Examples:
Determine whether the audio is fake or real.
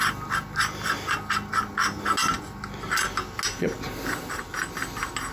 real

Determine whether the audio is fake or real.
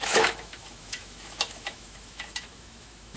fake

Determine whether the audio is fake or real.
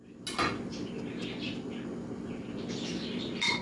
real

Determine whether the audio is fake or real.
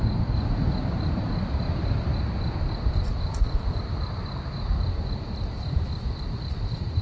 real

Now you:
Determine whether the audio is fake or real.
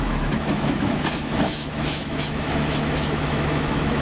fake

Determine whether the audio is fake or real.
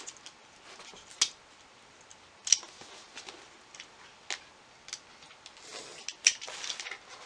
real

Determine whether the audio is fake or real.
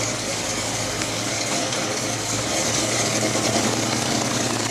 fake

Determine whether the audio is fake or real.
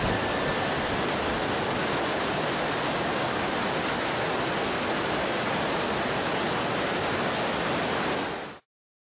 real